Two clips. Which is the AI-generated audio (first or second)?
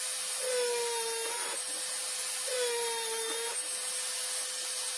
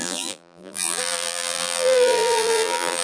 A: second